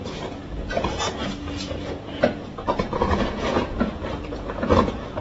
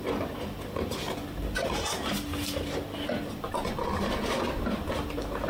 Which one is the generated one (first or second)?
first